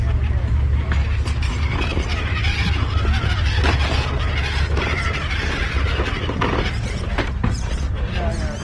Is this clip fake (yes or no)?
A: no